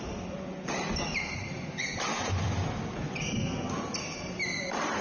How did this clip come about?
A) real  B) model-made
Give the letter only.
A